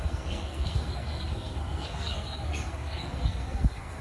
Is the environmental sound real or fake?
fake